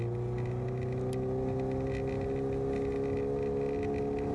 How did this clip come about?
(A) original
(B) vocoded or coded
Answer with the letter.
A